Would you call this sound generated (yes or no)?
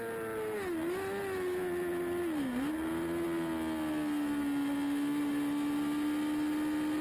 no